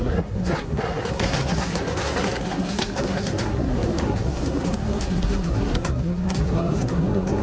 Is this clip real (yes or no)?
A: no